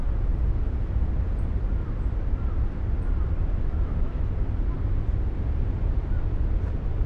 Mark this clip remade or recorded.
remade